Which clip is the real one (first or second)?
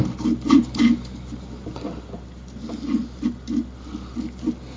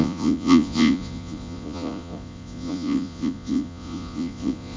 first